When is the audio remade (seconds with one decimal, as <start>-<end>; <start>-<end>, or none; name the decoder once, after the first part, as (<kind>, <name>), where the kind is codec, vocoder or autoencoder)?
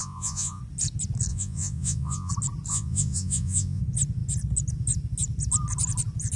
0.0-0.6 (vocoder, Vocos); 1.3-2.3; 2.7-3.8